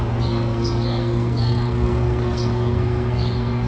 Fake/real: fake